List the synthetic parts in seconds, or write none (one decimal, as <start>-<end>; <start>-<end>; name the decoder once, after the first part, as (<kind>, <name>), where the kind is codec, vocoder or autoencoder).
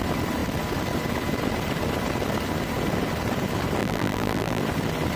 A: 3.8-4.6 (vocoder, BigVGAN v2)